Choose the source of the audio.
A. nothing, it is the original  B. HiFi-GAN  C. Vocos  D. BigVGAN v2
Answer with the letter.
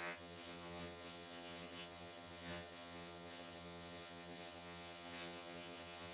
B